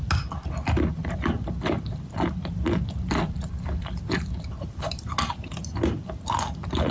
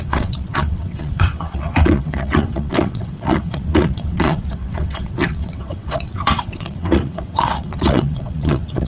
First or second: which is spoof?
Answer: second